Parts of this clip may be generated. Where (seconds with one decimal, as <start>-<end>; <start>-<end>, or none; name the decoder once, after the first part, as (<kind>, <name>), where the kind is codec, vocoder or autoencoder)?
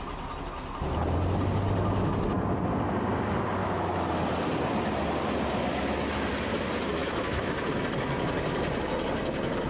3.6-4.1 (autoencoder, DAC-VAE); 7.0-7.5